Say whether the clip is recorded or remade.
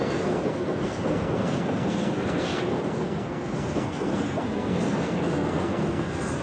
remade